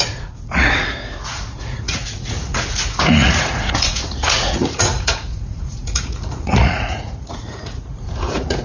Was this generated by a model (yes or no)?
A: yes